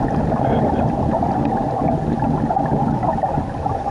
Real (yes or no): yes